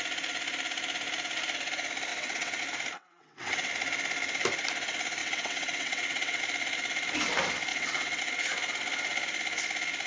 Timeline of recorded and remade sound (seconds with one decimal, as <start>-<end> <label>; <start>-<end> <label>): 0.0-2.1 recorded; 2.1-2.6 remade; 2.6-3.0 recorded; 3.0-3.7 remade; 3.7-5.2 recorded; 5.2-6.4 remade; 6.4-7.7 recorded; 7.7-8.2 remade; 8.2-10.1 recorded